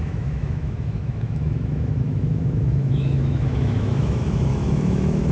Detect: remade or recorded remade